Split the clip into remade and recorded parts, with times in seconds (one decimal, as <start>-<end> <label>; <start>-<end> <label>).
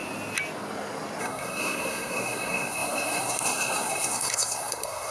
0.0-1.2 recorded; 1.2-5.1 remade